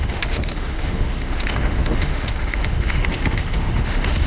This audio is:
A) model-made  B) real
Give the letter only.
A